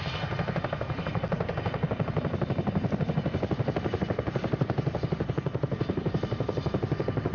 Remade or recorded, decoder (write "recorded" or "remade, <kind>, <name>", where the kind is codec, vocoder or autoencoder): recorded